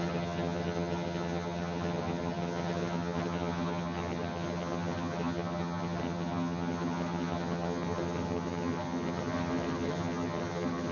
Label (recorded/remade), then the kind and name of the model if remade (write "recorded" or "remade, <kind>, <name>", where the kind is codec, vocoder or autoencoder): remade, vocoder, HiFi-GAN